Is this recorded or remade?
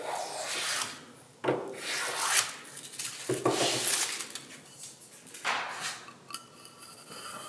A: recorded